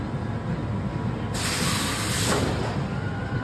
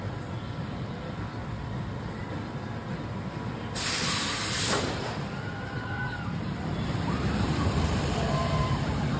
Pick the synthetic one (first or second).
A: second